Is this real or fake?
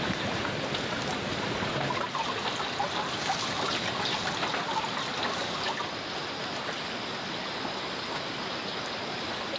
real